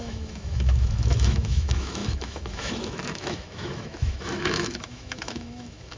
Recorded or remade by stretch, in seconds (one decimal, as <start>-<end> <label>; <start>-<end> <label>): 0.0-6.0 remade